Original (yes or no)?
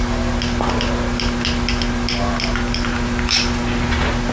yes